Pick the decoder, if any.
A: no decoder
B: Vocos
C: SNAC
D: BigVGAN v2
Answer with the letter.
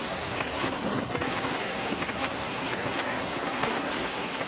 C